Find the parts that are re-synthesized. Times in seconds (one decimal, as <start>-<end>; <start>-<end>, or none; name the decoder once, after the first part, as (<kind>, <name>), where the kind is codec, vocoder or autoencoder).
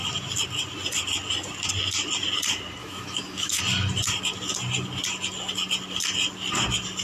2.8-3.6 (autoencoder, DAC-VAE)